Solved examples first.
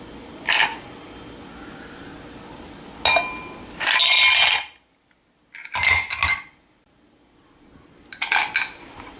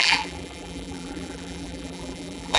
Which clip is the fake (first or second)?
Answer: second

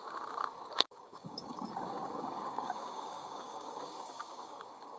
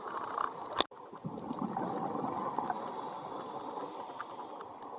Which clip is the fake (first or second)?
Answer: first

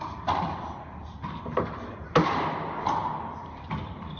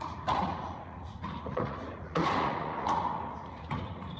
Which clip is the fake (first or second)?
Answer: second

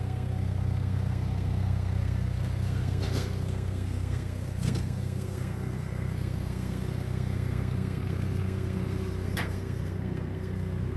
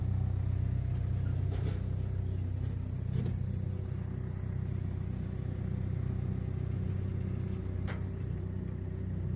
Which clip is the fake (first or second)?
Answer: first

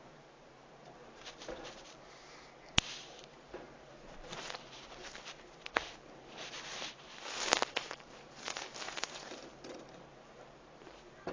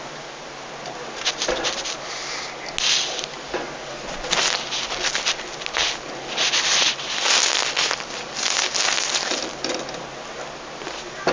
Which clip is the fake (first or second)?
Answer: first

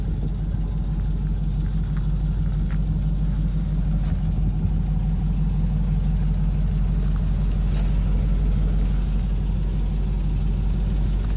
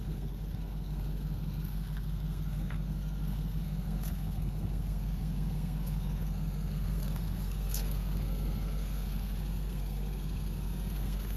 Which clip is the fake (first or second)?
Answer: second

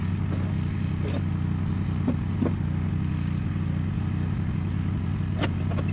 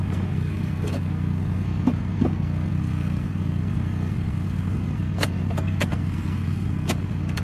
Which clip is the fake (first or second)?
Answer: second